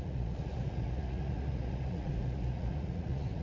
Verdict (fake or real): fake